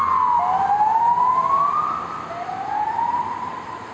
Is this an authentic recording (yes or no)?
yes